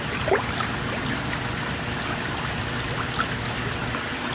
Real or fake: real